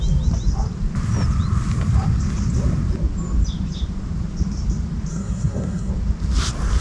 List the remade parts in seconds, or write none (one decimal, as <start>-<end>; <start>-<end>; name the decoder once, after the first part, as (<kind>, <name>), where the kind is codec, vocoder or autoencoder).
5.1-5.9 (codec, SNAC)